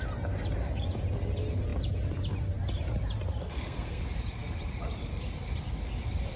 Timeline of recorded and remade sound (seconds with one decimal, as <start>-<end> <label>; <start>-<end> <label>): 0.0-3.4 recorded; 3.4-4.0 remade; 4.0-6.4 recorded